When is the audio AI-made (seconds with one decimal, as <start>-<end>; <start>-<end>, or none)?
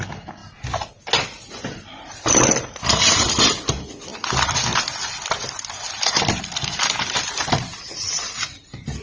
4.1-5.2